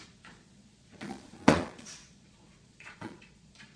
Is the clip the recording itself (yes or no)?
no